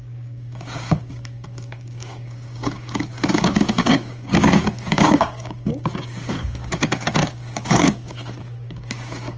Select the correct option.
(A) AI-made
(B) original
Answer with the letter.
A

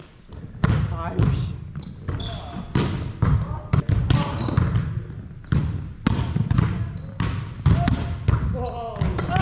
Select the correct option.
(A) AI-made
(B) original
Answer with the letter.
B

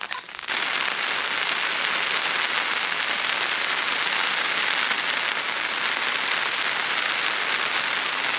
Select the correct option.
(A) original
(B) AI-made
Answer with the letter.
A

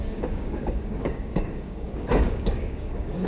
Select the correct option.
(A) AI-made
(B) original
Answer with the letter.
A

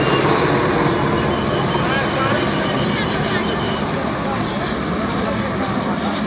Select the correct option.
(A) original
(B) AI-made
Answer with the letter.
A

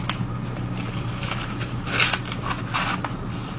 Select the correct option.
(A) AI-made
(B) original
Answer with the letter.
B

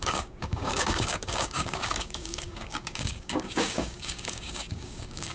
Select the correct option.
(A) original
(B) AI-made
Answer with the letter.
B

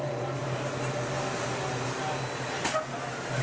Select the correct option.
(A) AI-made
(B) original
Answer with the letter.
B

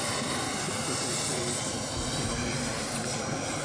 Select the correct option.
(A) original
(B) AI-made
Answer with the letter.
A